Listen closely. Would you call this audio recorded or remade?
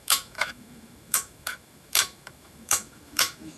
remade